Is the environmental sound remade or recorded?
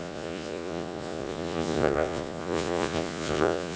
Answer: remade